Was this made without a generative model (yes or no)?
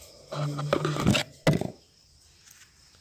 yes